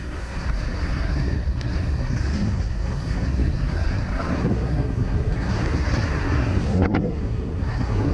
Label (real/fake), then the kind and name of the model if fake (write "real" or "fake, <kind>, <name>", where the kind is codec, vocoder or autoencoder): fake, codec, SNAC